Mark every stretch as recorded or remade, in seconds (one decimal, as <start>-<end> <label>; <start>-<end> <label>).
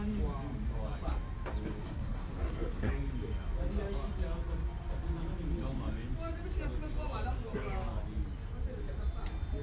0.0-1.8 recorded; 1.8-2.9 remade; 2.9-9.6 recorded